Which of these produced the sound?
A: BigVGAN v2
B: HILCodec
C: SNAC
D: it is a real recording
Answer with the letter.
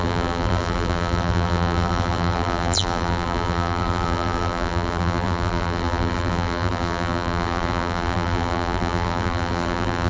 A